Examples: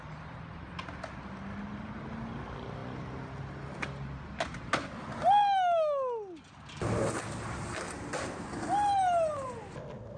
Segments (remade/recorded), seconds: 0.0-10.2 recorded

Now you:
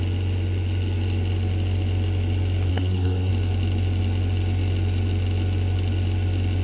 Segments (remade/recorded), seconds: 0.0-2.7 recorded; 2.7-3.3 remade; 3.3-6.6 recorded

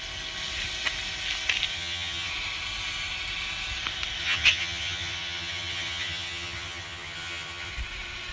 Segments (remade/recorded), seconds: 0.0-1.7 recorded; 1.7-2.3 remade; 2.3-4.2 recorded; 4.2-7.7 remade; 7.7-8.3 recorded

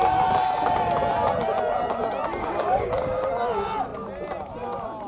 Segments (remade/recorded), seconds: 0.0-2.4 recorded; 2.4-3.3 remade; 3.3-5.1 recorded